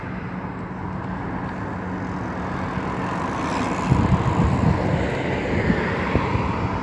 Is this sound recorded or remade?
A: recorded